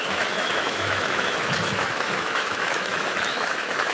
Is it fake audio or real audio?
fake